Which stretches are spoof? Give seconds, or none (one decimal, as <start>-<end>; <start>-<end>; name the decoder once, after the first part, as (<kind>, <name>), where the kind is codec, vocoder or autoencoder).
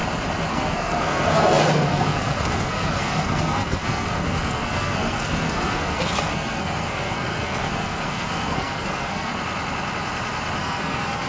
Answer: 0.5-9.3 (codec, SNAC); 10.6-11.3